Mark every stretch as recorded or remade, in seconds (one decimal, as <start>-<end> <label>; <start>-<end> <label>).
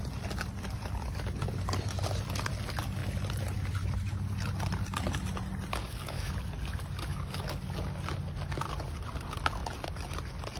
0.0-5.8 recorded; 5.8-6.3 remade; 6.3-7.1 recorded; 7.1-7.6 remade; 7.6-10.6 recorded